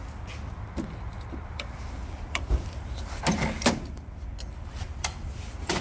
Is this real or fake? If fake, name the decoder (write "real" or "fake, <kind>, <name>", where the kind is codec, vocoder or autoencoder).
real